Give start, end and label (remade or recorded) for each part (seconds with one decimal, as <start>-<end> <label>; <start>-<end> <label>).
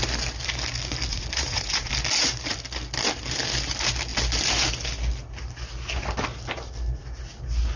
0.0-1.1 recorded; 1.1-1.9 remade; 1.9-7.8 recorded